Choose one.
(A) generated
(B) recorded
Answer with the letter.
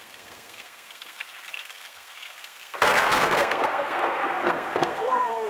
A